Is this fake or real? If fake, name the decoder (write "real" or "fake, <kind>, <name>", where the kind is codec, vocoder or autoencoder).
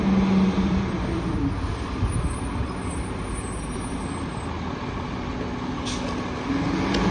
real